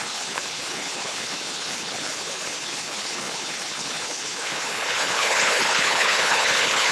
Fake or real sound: fake